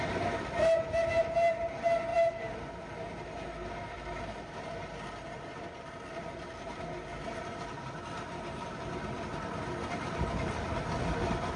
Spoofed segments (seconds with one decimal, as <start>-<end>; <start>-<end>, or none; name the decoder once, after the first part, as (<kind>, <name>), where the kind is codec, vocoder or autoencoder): none